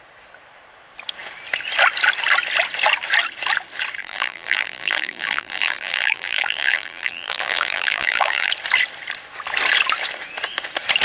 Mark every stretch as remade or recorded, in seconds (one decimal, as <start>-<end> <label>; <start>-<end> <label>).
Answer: 0.0-4.0 recorded; 4.0-8.5 remade; 8.5-11.0 recorded